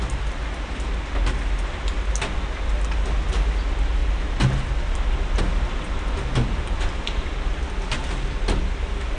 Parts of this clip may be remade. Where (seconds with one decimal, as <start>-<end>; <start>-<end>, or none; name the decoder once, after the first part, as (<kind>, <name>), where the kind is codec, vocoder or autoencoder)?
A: none